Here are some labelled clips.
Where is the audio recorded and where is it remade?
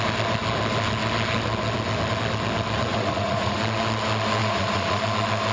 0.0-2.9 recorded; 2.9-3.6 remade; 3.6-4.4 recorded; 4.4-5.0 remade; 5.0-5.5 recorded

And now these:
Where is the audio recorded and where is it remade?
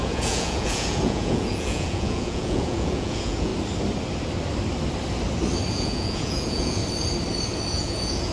0.0-3.5 remade; 3.5-5.7 recorded; 5.7-6.8 remade; 6.8-7.7 recorded; 7.7-8.3 remade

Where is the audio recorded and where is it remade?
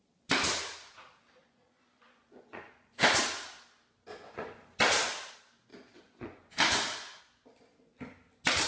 0.0-1.4 recorded; 1.4-3.2 remade; 3.2-4.1 recorded; 4.1-4.8 remade; 4.8-5.7 recorded; 5.7-7.2 remade; 7.2-8.7 recorded